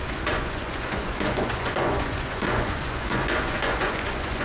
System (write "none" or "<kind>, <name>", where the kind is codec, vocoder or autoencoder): vocoder, Vocos